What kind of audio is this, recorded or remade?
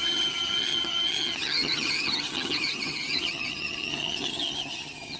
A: remade